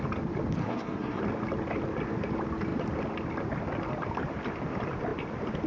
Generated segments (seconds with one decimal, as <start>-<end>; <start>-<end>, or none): 0.6-1.2